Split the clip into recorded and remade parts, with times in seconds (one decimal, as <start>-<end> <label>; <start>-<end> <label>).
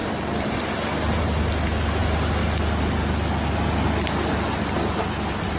0.0-5.6 recorded